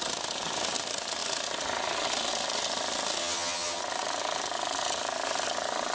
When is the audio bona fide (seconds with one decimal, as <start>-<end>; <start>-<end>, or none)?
0.0-3.2; 3.8-5.9